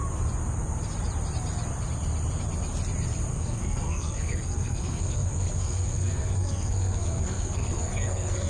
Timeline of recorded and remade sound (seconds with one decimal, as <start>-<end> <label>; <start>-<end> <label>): 0.0-3.3 recorded; 3.3-8.5 remade